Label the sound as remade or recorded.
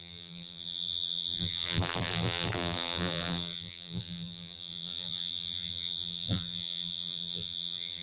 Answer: remade